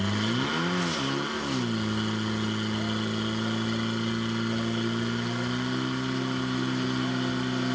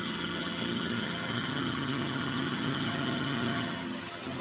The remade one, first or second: second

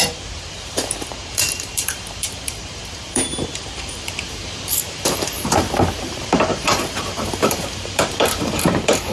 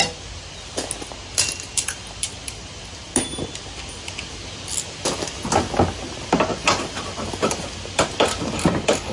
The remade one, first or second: first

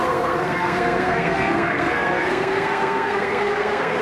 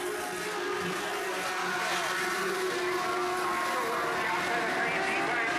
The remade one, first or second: first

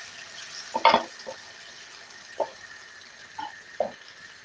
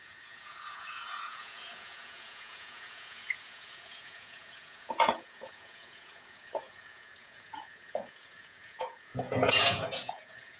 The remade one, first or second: second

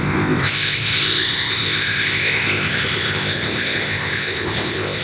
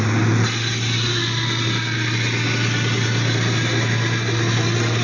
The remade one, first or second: first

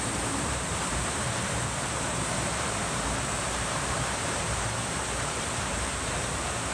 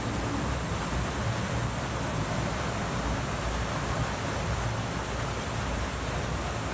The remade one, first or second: first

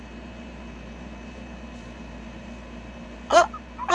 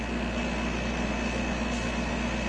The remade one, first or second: first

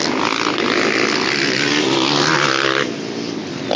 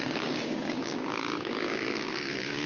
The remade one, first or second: second